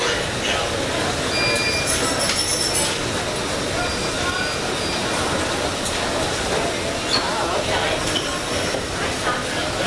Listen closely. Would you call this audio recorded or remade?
recorded